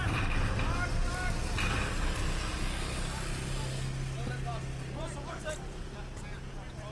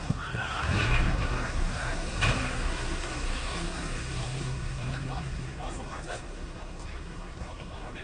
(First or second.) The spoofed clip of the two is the second